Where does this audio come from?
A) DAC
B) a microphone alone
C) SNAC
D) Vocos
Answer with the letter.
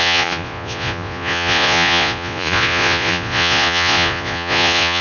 D